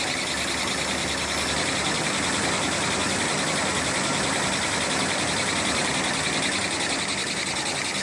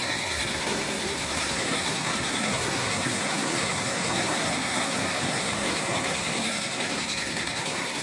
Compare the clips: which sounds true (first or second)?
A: first